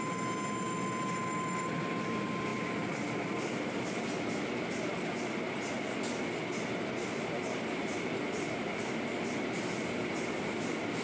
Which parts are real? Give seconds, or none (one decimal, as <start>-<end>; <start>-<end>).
0.0-11.0